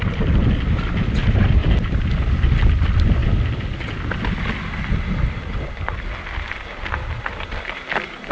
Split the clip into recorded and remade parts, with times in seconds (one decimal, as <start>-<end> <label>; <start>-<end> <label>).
0.0-1.2 recorded; 1.2-1.9 remade; 1.9-8.3 recorded